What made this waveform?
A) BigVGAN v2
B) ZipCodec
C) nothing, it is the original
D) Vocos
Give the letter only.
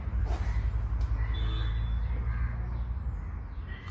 C